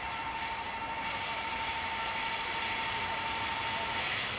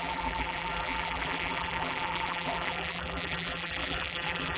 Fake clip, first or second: second